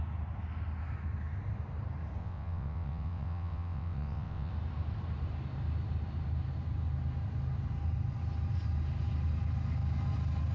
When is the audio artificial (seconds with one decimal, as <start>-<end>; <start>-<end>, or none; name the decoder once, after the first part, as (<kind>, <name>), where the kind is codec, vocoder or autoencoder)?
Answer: 2.2-4.5 (vocoder, WaveNeXt)